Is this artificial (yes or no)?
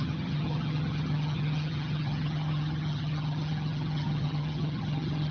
yes